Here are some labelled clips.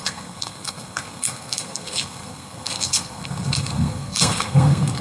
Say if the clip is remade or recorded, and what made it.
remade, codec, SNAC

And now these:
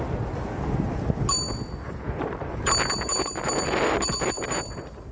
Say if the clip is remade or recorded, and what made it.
recorded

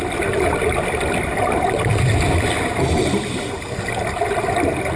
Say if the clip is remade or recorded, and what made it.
recorded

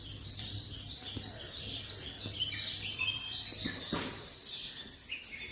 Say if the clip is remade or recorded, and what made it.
remade, vocoder, BigVGAN v2